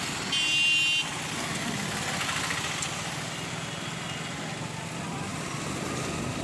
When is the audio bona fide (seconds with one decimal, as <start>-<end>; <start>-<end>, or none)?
0.0-6.4

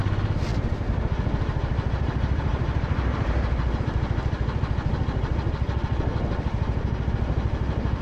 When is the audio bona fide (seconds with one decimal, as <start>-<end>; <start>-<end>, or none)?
0.0-0.5; 3.8-6.1; 7.1-8.0

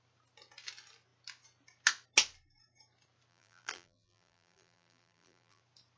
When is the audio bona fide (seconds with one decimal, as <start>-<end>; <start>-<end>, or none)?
0.0-3.3; 5.6-6.0

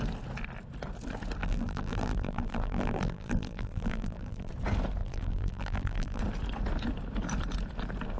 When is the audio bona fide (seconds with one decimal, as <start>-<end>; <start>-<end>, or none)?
0.0-1.4; 4.5-5.0; 6.2-8.2

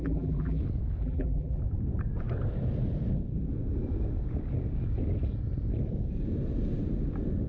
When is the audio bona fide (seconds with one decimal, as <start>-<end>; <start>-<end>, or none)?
0.6-1.0; 1.6-7.5